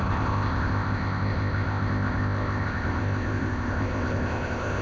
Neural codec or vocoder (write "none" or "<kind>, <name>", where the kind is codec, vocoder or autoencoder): codec, ZipCodec